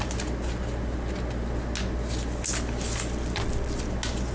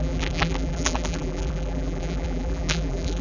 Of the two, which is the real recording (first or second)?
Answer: first